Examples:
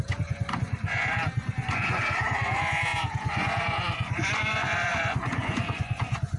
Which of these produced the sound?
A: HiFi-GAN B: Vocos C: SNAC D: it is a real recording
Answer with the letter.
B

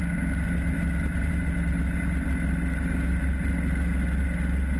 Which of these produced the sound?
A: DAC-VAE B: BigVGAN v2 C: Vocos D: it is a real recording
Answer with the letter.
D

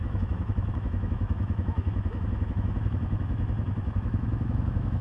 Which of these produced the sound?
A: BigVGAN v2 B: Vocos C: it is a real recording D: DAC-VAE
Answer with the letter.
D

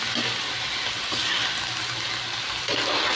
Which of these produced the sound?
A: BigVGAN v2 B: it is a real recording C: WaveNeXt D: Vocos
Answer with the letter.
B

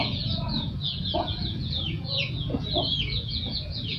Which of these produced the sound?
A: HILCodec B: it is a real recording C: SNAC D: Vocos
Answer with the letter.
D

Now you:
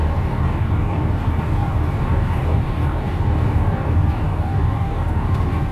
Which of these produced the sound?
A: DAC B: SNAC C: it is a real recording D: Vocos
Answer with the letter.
A